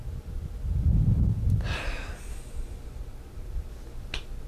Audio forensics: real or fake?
real